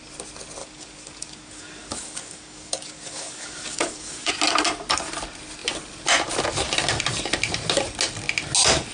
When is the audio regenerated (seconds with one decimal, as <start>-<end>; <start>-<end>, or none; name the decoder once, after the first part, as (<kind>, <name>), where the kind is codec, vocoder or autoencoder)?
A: 0.6-4.3 (codec, DAC)